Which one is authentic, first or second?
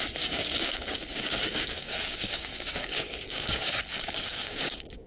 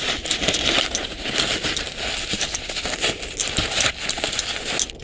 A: second